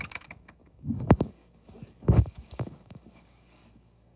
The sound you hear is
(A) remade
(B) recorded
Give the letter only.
A